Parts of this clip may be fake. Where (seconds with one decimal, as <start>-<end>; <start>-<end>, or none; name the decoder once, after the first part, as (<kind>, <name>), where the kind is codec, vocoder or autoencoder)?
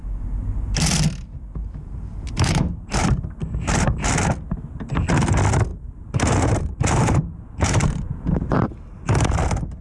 1.6-4.1 (vocoder, BigVGAN v2); 5.7-8.5